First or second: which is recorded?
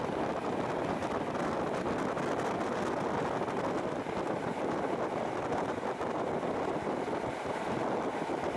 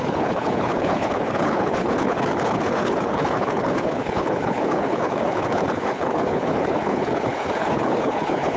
first